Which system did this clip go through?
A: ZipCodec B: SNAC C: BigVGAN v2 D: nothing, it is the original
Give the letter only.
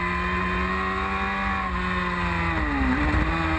D